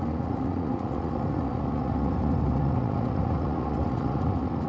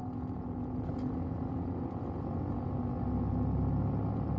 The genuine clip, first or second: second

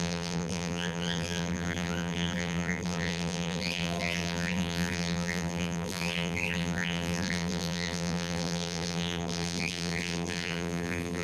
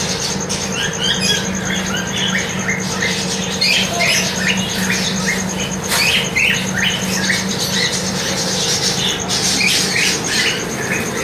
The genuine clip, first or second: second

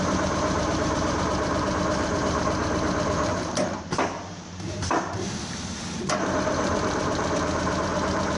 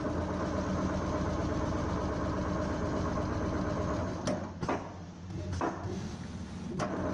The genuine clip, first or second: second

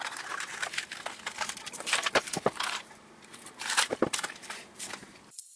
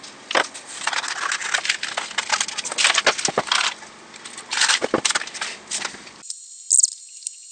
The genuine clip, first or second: second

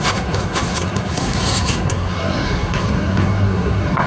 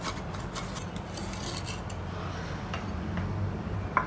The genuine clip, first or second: second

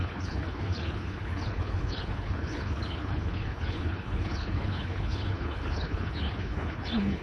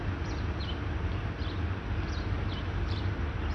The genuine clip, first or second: second